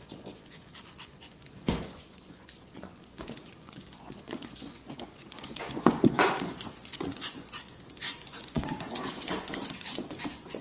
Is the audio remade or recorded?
remade